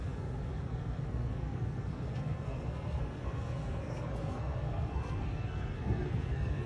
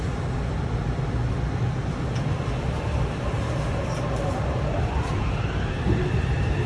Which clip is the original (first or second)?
second